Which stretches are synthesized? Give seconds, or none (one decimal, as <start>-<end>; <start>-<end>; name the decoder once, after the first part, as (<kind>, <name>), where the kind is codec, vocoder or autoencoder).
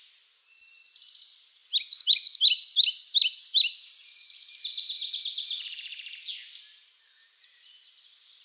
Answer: none